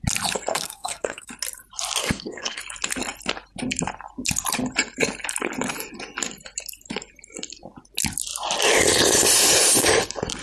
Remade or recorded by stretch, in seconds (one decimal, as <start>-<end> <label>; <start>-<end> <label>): 0.0-0.5 recorded; 0.5-1.3 remade; 1.3-2.0 recorded; 2.0-2.6 remade; 2.6-10.4 recorded